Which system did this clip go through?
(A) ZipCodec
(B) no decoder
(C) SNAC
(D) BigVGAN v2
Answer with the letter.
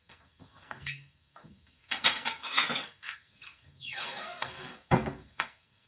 C